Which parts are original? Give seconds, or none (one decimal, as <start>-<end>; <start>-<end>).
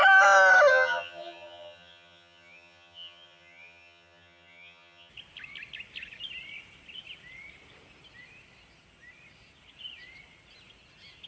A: 0.0-0.7; 5.1-11.3